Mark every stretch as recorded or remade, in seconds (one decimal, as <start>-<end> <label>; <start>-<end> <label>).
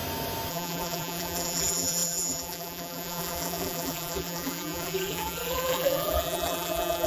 0.0-0.5 recorded; 0.5-7.1 remade